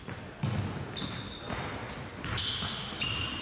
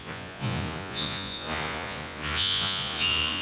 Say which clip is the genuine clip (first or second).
first